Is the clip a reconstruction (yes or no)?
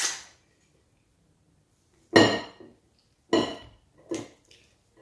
no